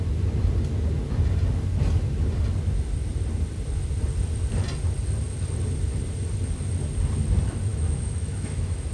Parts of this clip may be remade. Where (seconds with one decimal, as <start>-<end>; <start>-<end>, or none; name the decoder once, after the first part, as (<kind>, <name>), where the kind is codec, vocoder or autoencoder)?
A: 7.7-8.9 (autoencoder, DAC-VAE)